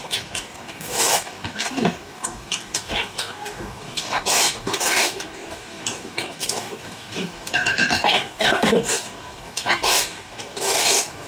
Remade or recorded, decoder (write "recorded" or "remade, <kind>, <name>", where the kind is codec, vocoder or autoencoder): remade, codec, DAC